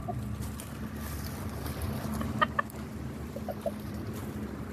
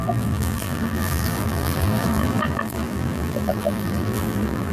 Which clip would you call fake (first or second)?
second